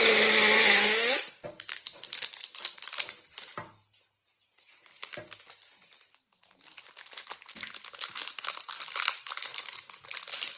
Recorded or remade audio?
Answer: recorded